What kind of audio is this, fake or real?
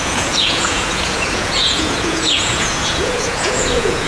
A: fake